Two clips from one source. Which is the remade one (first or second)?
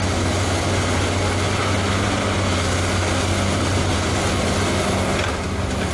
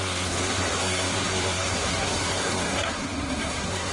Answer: second